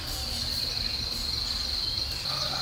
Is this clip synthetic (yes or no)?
no